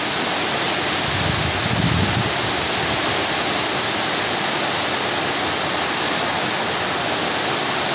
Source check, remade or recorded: recorded